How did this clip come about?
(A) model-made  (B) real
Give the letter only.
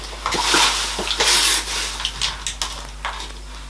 B